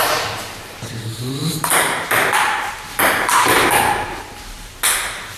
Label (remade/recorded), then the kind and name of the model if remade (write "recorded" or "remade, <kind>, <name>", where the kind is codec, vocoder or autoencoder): remade, vocoder, BigVGAN v2